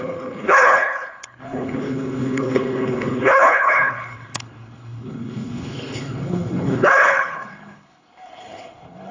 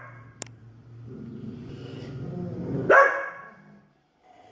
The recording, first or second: second